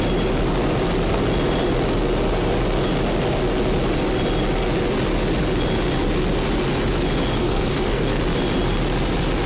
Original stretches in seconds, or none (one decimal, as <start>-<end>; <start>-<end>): 0.0-7.4; 8.2-9.5